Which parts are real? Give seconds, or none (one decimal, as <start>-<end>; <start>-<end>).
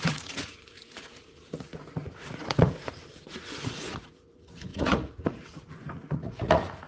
none